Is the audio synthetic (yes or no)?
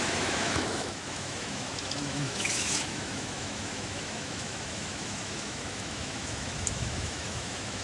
yes